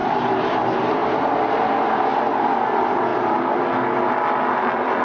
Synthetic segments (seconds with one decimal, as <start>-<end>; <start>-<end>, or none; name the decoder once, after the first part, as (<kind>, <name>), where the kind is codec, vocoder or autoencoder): none